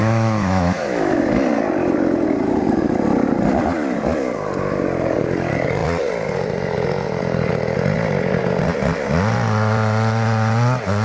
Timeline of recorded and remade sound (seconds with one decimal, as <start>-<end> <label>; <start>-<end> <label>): 0.0-1.3 remade; 1.3-11.0 recorded